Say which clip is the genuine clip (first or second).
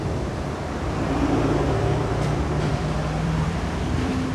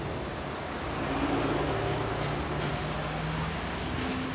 second